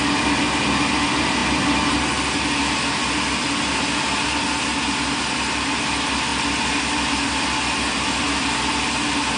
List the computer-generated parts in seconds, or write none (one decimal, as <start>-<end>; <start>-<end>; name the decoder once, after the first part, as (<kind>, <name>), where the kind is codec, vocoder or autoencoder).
none